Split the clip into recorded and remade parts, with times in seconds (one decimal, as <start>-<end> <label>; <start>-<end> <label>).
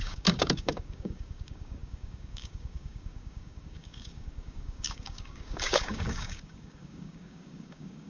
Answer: 0.0-8.1 remade